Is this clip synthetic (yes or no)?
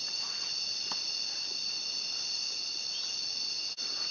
no